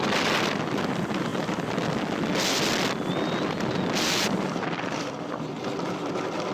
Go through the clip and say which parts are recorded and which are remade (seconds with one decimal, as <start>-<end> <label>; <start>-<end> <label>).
0.0-6.5 recorded